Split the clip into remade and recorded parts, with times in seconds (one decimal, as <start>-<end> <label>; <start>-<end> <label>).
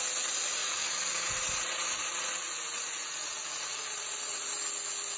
0.0-0.6 recorded; 0.6-1.1 remade; 1.1-2.1 recorded; 2.1-4.5 remade; 4.5-5.2 recorded